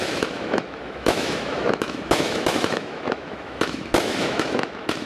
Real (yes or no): no